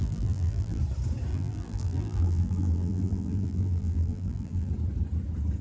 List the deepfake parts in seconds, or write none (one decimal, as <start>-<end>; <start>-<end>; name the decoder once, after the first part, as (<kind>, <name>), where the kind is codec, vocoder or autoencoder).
0.0-0.8 (vocoder, BigVGAN v2); 1.3-4.7